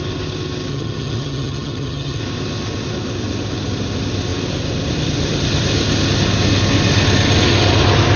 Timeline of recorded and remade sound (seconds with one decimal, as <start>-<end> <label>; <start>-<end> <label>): 0.0-0.7 recorded; 0.7-2.2 remade; 2.2-8.2 recorded